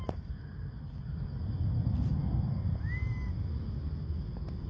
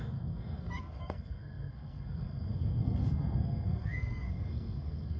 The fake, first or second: second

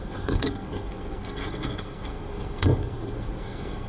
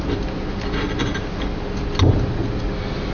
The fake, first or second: first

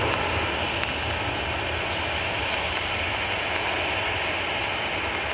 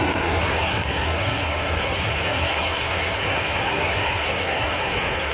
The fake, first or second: second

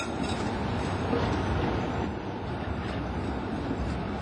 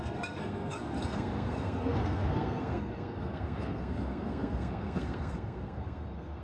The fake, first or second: second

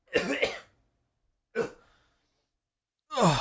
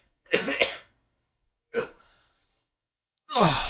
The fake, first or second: second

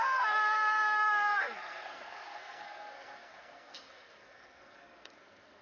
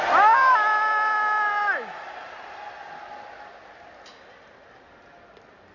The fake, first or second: first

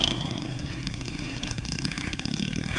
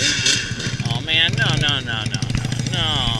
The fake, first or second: first